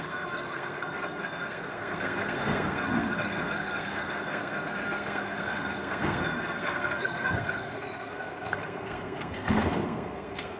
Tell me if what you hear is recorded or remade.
remade